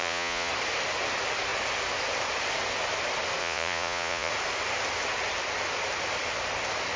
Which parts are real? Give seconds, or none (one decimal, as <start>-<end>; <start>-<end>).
0.5-3.4; 4.3-7.0